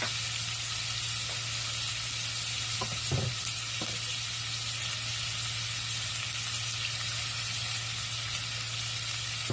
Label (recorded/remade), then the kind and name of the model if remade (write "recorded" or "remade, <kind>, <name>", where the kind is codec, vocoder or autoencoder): recorded